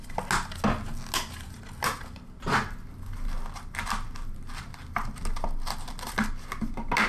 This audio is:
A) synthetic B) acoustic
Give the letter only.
B